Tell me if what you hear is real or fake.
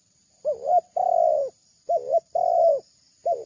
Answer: real